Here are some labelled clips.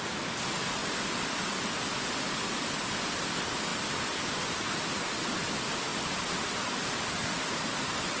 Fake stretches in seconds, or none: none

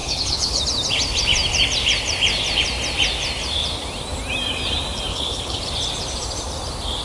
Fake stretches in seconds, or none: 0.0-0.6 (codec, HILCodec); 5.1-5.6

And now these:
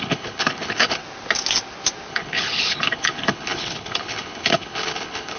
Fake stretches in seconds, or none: 0.0-1.0 (codec, HILCodec); 2.1-5.4

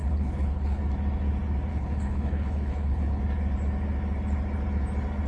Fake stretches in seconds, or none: 0.0-0.8 (codec, HILCodec); 1.7-3.2

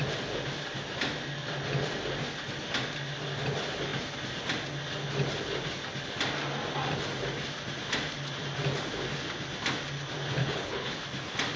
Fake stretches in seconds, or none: 10.4-11.0 (codec, HILCodec)